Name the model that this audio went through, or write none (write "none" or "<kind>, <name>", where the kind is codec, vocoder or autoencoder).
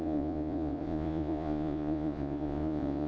vocoder, Vocos